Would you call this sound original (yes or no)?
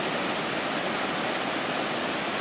yes